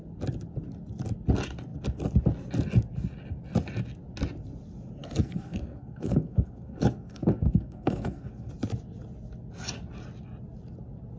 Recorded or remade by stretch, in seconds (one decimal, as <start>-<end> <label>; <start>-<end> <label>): 0.0-5.0 recorded; 5.0-8.5 remade; 8.5-11.2 recorded